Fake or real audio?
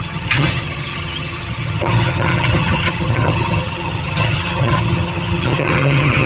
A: fake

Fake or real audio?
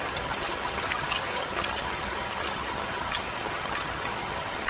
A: fake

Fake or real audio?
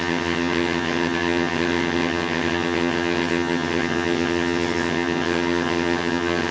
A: fake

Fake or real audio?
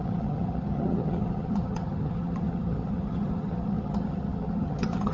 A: fake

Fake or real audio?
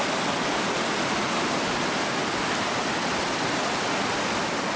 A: real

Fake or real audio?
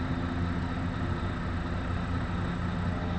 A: real